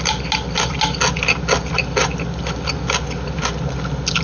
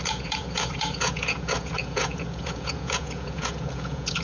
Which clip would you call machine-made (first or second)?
second